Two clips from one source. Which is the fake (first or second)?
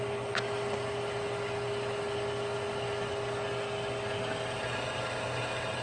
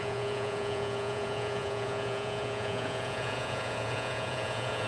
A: second